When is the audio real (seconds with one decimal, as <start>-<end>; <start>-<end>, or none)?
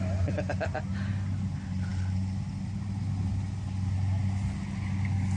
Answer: 0.0-5.4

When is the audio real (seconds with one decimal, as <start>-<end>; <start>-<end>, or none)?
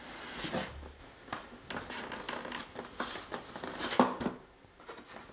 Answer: 0.0-5.3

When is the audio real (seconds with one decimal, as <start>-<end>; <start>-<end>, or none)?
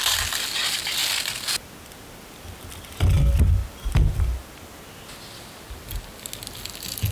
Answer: 0.0-7.1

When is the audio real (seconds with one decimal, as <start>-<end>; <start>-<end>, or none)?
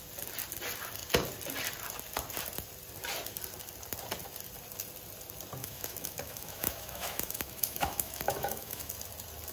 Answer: 0.0-5.6; 8.9-9.5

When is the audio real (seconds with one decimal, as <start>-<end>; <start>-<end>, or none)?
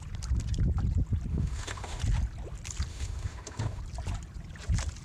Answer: 0.0-1.3; 2.0-2.9; 3.8-5.0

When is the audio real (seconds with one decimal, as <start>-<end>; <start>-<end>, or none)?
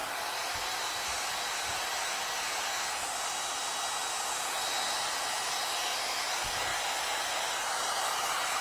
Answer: 0.0-8.6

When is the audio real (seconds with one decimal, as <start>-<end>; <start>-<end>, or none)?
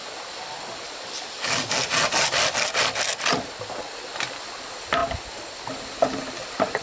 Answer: 0.0-6.8